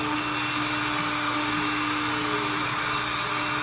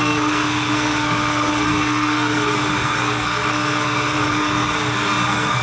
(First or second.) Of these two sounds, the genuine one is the first